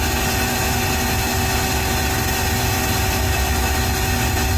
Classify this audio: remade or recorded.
recorded